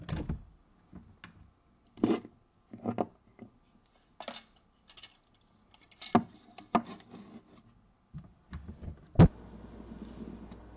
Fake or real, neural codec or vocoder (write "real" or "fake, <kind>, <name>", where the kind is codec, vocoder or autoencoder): real